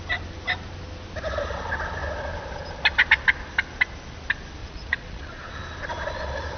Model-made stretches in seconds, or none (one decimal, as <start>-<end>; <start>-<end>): 4.6-5.5